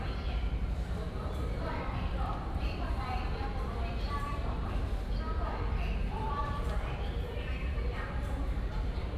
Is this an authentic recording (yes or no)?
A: no